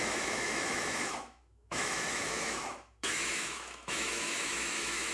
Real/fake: fake